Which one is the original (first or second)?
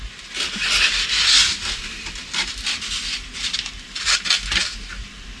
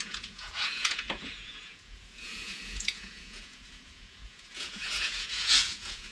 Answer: first